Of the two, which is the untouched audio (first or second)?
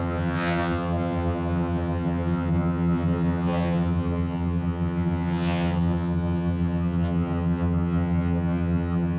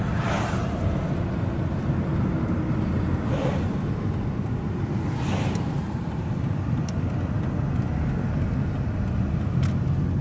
second